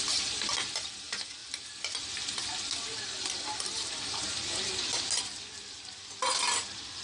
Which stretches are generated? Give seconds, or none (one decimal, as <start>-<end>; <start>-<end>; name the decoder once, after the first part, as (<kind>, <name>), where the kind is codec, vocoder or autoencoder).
none